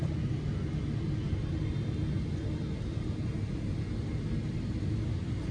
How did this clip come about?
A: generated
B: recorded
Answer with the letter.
B